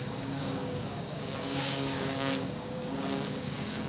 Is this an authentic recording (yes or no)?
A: no